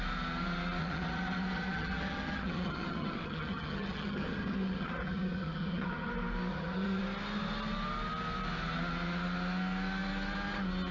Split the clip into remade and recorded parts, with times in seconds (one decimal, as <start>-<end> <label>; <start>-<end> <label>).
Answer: 0.0-0.8 recorded; 0.8-6.1 remade; 6.1-6.5 recorded; 6.5-7.0 remade; 7.0-10.9 recorded